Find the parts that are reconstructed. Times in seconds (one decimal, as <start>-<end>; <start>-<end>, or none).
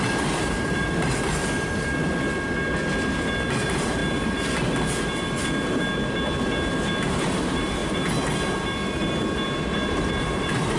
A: 0.0-1.4; 3.6-4.0; 7.1-7.8; 10.2-10.8